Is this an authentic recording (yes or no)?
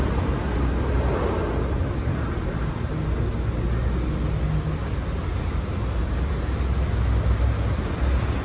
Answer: yes